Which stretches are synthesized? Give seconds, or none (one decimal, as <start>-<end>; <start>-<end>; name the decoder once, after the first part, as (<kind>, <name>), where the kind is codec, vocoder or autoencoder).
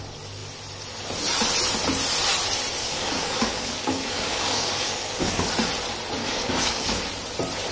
2.8-5.5 (codec, DAC); 6.2-7.0